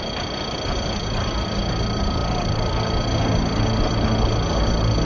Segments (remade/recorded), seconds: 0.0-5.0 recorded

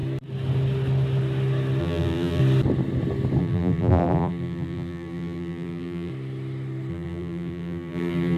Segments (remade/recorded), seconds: 0.0-1.8 recorded; 1.8-2.4 remade; 2.4-3.4 recorded; 3.4-6.1 remade; 6.1-6.9 recorded; 6.9-8.4 remade